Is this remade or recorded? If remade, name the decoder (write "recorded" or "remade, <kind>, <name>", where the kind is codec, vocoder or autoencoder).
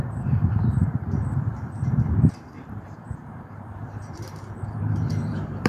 remade, vocoder, BigVGAN v2